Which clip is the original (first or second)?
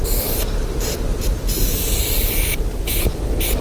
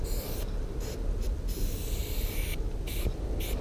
second